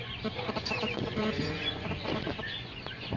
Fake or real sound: fake